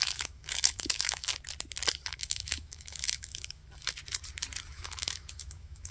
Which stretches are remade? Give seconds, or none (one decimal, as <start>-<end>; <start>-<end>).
0.0-1.3; 2.1-3.6; 4.7-5.9